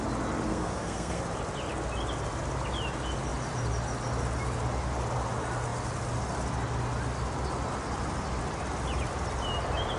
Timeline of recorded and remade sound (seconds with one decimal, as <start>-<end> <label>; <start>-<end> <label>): 0.0-0.5 recorded; 0.5-1.2 remade; 1.2-10.0 recorded